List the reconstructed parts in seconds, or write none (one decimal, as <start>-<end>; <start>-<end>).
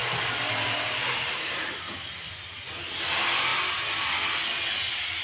0.0-0.8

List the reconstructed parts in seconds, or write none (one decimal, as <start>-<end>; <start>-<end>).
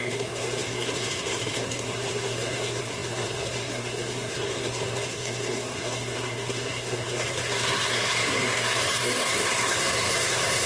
0.0-10.7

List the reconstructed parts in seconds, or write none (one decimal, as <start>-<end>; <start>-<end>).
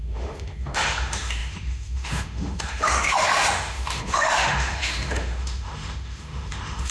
0.0-6.9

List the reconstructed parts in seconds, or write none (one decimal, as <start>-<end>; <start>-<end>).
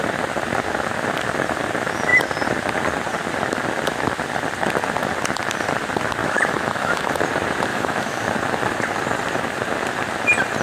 6.2-7.2; 7.7-8.3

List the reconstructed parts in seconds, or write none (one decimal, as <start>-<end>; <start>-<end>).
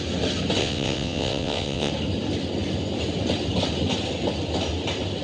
0.6-1.9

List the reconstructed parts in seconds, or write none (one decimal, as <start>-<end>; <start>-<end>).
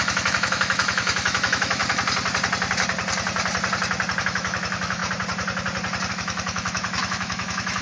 0.0-1.8; 4.2-5.0; 6.1-7.8